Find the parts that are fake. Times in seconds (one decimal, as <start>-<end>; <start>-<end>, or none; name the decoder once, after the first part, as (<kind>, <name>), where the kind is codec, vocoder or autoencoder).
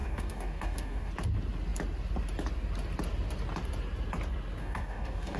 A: 0.0-1.1 (codec, DAC); 4.6-5.4